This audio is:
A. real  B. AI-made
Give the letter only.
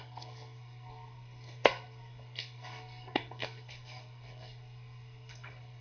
B